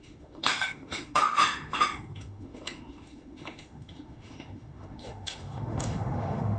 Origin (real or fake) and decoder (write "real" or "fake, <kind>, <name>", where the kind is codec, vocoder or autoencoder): fake, autoencoder, DAC-VAE